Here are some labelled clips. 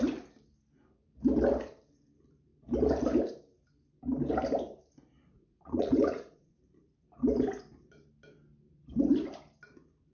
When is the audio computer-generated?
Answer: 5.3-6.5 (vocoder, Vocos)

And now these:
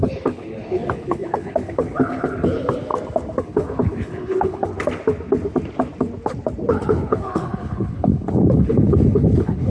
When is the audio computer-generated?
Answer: 0.0-2.9 (codec, HILCodec); 3.4-4.7; 6.7-9.7

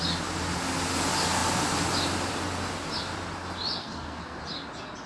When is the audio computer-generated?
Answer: 3.8-4.4 (codec, SNAC)

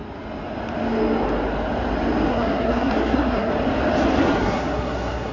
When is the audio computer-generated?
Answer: 2.3-3.5 (codec, SNAC); 4.2-5.3

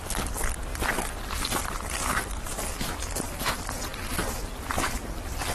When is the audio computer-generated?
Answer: 2.3-3.3 (vocoder, BigVGAN v2)